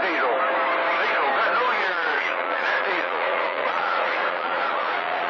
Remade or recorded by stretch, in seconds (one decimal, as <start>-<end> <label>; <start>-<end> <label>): 0.0-1.7 recorded; 1.7-5.3 remade